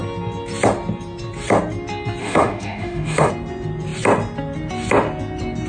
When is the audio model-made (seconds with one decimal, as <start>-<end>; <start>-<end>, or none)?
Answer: 2.2-3.3